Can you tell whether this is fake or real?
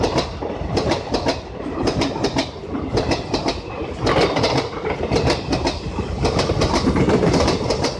real